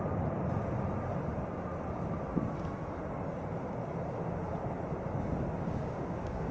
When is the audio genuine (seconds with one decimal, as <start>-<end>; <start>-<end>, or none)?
0.0-5.6